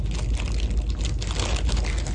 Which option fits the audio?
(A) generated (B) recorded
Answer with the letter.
B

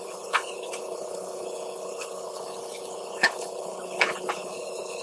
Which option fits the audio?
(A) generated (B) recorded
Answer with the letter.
A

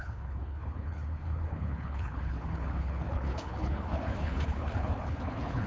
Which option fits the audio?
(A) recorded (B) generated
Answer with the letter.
B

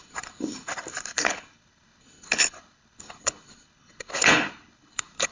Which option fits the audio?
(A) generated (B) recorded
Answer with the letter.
A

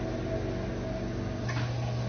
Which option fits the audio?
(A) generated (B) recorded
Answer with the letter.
B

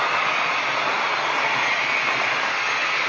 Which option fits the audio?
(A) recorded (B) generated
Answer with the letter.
A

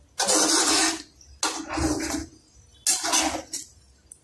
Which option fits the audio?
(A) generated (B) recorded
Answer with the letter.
B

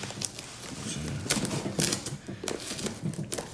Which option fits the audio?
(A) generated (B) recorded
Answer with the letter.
B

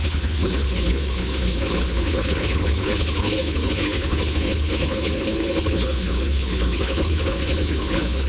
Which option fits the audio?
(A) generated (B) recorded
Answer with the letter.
A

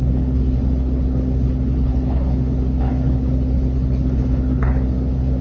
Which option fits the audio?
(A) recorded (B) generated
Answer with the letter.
B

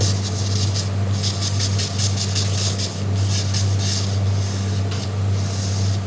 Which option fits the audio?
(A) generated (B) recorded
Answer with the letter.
B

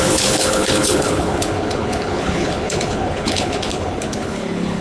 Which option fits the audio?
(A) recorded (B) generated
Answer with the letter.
B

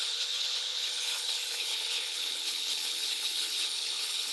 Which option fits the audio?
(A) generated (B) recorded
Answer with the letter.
A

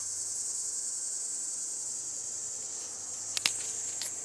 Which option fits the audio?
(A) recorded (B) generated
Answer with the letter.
A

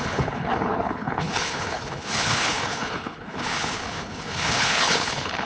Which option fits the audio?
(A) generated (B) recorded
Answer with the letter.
A